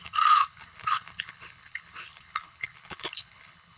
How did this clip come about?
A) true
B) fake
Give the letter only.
B